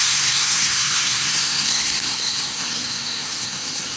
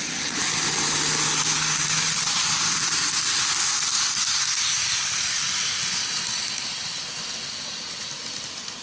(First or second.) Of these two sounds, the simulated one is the first